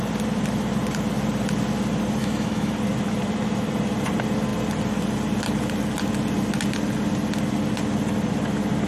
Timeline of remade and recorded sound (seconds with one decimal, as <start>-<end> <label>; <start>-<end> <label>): 0.0-2.2 recorded; 2.2-2.7 remade; 2.7-8.9 recorded